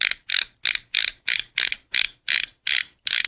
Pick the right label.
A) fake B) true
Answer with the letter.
B